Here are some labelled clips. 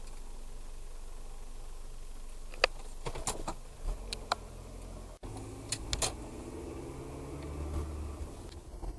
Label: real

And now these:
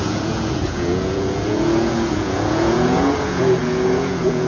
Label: fake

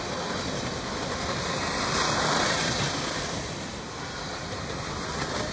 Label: real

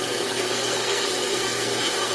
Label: fake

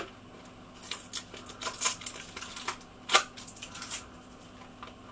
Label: real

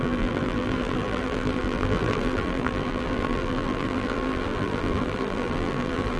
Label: fake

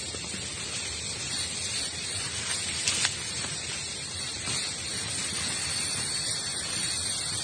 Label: real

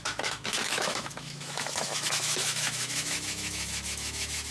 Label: fake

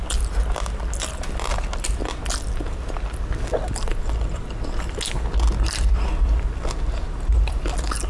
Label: real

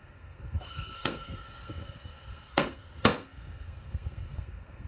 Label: fake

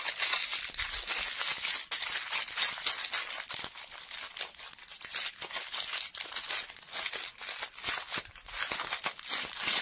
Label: real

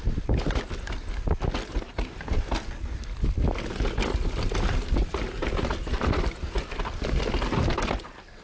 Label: real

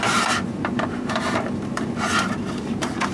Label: fake